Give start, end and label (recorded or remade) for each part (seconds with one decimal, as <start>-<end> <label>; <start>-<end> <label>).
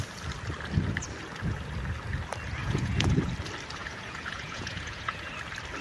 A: 0.0-2.6 recorded; 2.6-3.3 remade; 3.3-3.8 recorded; 3.8-5.3 remade; 5.3-5.8 recorded